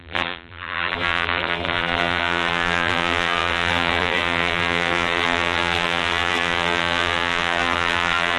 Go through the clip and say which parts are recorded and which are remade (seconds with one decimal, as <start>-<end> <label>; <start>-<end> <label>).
0.0-8.4 remade